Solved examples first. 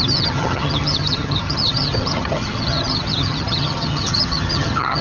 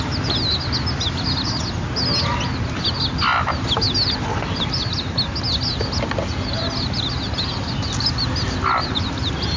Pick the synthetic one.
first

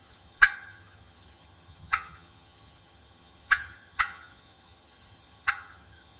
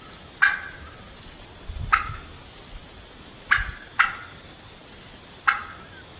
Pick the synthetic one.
first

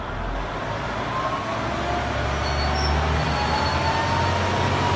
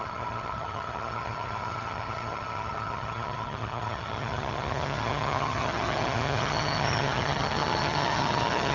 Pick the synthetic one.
second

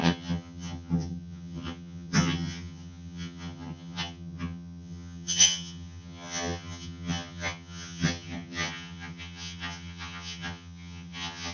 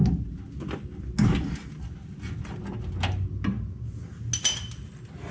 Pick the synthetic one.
first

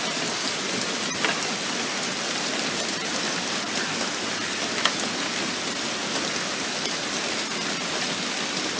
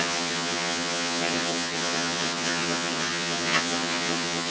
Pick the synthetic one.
second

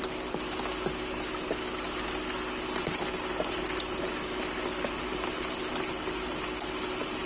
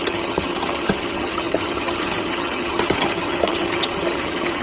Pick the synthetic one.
second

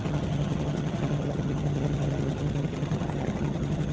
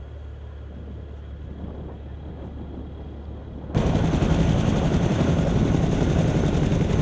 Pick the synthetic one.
first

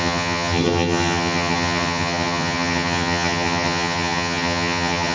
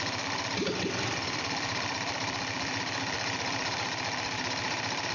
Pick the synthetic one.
first